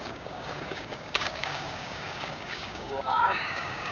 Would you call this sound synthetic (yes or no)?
yes